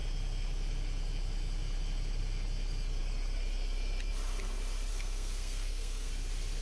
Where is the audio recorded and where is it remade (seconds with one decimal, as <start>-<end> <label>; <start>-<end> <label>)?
0.0-4.9 recorded; 4.9-6.1 remade; 6.1-6.6 recorded